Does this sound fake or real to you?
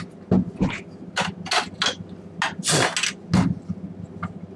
real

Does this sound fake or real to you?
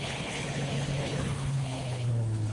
fake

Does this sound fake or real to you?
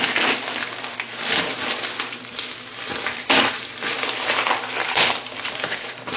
real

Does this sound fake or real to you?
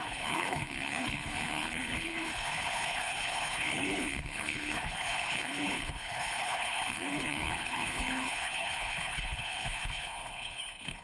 fake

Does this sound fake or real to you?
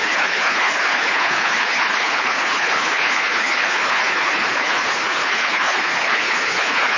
fake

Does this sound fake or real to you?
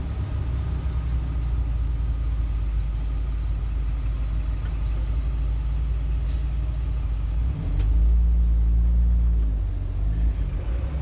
real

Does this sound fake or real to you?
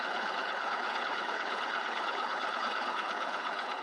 fake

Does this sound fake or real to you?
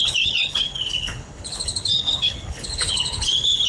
fake